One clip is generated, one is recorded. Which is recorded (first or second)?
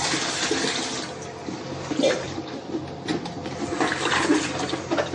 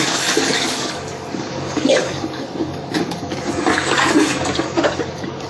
first